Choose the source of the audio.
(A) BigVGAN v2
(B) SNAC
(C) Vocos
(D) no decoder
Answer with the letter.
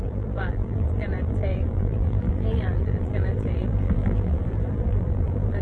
A